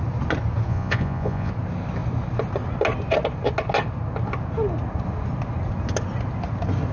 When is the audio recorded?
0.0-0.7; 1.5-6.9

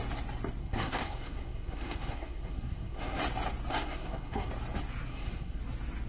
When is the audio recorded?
0.0-0.6; 3.2-3.7; 4.5-5.1; 5.6-6.1

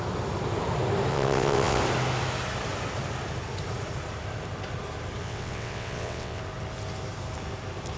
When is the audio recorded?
0.0-1.1; 1.8-5.2; 6.4-8.0

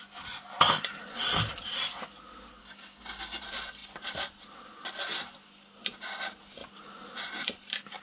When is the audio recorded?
0.0-2.6; 3.4-8.0

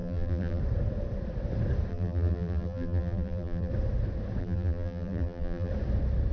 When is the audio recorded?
0.6-1.9; 3.7-4.4; 5.7-6.3

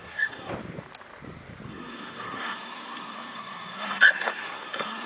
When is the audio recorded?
0.5-1.7

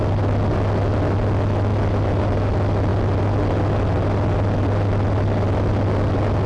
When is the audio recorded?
0.0-6.5